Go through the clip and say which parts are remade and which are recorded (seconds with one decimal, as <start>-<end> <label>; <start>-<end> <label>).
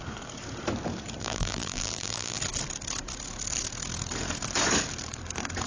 0.0-1.2 recorded; 1.2-2.4 remade; 2.4-5.7 recorded